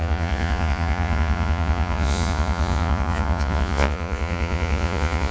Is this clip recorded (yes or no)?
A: no